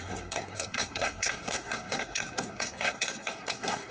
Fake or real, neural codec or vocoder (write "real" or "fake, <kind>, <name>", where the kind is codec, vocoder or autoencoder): fake, codec, SNAC